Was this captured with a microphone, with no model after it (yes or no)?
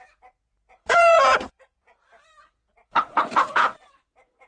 no